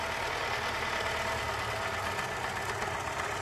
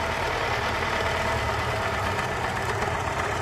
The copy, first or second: second